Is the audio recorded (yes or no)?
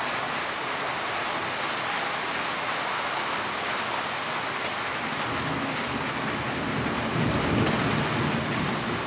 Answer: yes